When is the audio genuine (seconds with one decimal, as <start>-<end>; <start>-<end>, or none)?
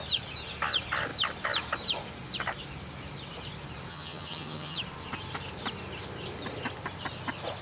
0.0-3.9; 4.8-7.6